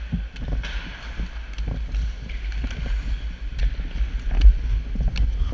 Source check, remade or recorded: recorded